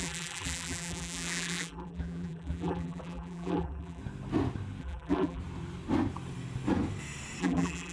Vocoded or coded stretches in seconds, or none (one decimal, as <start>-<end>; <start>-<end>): 0.0-4.0; 4.8-5.4; 7.4-7.9